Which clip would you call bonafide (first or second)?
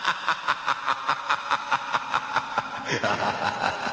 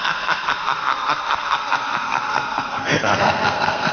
first